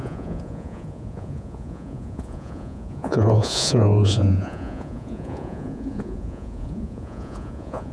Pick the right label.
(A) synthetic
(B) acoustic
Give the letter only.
A